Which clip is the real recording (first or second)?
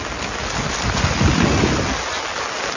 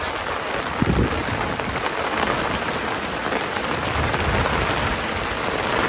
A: first